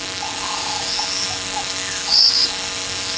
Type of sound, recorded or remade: remade